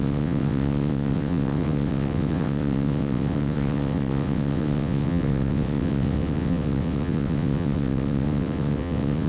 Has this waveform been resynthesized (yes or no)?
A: yes